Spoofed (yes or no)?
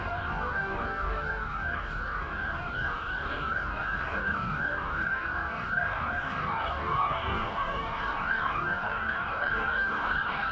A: yes